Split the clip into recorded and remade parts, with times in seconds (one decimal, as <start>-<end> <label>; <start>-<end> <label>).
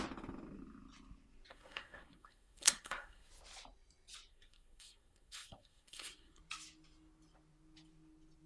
0.0-1.5 recorded; 1.5-3.3 remade; 3.3-4.3 recorded; 4.3-6.4 remade; 6.4-8.5 recorded